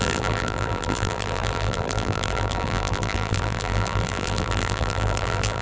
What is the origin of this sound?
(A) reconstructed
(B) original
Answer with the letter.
A